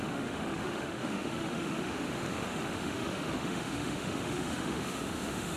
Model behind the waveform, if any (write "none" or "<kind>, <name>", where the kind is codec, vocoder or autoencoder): autoencoder, DAC-VAE